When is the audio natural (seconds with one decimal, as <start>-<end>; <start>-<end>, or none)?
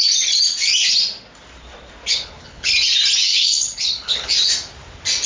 0.0-2.1; 2.7-3.2; 4.3-5.3